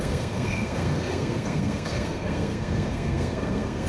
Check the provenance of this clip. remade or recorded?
remade